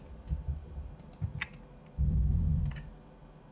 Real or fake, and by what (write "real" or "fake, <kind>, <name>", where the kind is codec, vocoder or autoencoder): real